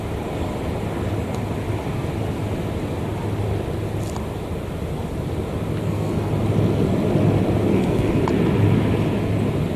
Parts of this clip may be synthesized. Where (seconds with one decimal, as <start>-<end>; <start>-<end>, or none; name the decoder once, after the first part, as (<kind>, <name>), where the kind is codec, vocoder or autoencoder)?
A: 5.8-6.3 (codec, SNAC); 7.7-8.2